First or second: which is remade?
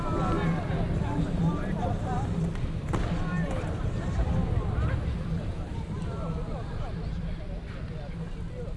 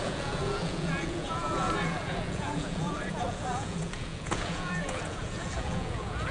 second